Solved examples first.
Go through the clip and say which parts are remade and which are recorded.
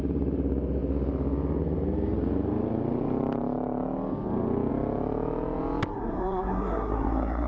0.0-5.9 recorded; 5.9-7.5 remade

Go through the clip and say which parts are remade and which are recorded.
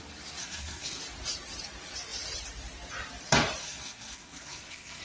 0.0-0.4 recorded; 0.4-1.0 remade; 1.0-3.6 recorded; 3.6-5.0 remade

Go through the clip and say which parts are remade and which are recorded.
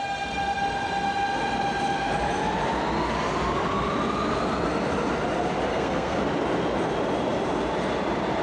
0.0-5.7 recorded; 5.7-6.2 remade; 6.2-8.4 recorded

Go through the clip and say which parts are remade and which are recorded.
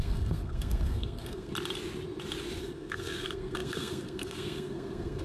0.0-1.5 remade; 1.5-2.6 recorded; 2.6-5.2 remade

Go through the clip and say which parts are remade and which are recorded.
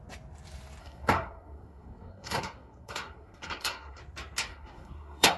0.0-0.8 recorded; 0.8-4.0 remade; 4.0-4.5 recorded; 4.5-5.4 remade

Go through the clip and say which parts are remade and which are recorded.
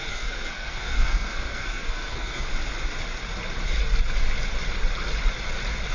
0.0-2.5 remade; 2.5-5.9 recorded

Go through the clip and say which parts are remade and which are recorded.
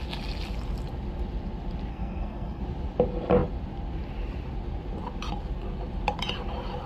0.0-1.9 recorded; 1.9-2.6 remade; 2.6-6.9 recorded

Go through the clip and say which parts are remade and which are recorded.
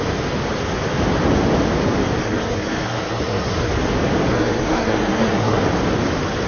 0.0-2.2 recorded; 2.2-3.7 remade; 3.7-4.3 recorded; 4.3-5.6 remade; 5.6-6.5 recorded